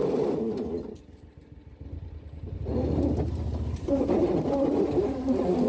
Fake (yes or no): no